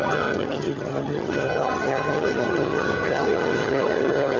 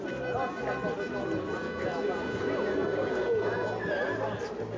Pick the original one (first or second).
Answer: second